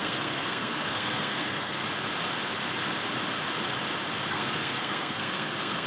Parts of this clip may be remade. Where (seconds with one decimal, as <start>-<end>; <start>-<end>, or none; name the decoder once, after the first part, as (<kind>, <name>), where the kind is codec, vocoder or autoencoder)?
0.0-1.8 (codec, SNAC); 4.3-5.9